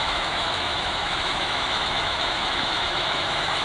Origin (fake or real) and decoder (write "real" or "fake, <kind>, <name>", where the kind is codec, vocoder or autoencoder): fake, autoencoder, DAC-VAE